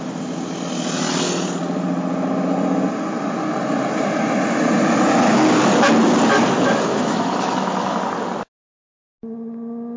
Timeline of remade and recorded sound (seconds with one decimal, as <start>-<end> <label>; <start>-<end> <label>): 0.0-6.9 recorded; 6.9-8.0 remade; 8.0-10.0 recorded